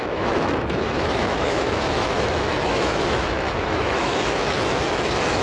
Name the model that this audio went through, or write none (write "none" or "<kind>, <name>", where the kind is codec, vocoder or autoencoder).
autoencoder, DAC-VAE